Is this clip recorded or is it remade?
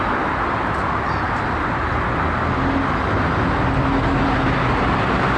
recorded